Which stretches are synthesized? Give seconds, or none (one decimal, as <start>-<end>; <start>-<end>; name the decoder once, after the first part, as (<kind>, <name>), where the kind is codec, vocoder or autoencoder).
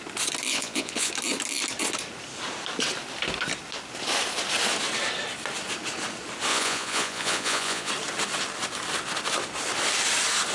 0.5-1.1 (vocoder, Vocos); 6.5-7.9